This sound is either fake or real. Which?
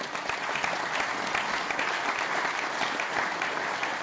real